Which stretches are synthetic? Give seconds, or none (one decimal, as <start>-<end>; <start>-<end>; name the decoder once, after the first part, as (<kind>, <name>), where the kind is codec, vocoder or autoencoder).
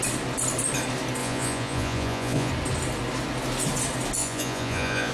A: 1.2-2.5 (vocoder, Vocos); 4.2-5.1